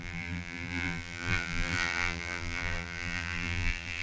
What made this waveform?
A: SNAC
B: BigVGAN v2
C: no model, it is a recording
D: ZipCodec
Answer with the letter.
B